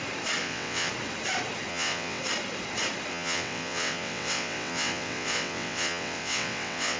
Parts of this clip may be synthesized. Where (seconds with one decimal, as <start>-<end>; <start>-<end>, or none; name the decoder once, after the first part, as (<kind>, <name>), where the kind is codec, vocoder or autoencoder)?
0.4-0.9 (vocoder, WaveNeXt); 1.7-2.2; 3.1-7.0